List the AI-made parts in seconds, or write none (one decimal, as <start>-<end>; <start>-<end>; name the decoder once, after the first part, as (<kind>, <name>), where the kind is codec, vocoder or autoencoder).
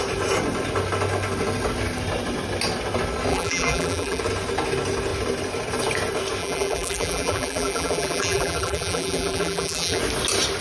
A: 3.3-4.2 (vocoder, BigVGAN v2); 6.4-10.0